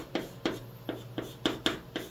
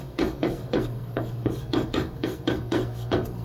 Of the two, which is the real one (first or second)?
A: first